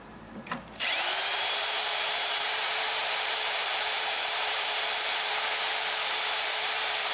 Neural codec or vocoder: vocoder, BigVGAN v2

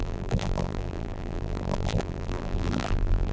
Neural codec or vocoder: vocoder, BigVGAN v2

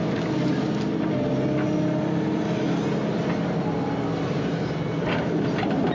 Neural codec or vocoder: none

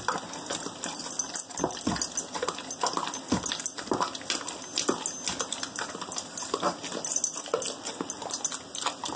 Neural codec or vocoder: none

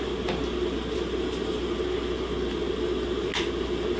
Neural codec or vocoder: none